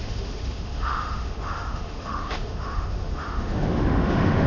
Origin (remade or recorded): remade